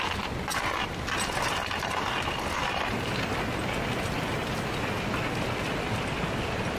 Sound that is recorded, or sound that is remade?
recorded